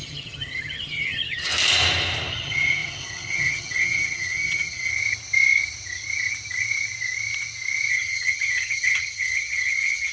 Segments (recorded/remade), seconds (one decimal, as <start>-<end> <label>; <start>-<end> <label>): 0.0-1.5 remade; 1.5-2.3 recorded; 2.3-4.9 remade; 4.9-7.9 recorded; 7.9-10.1 remade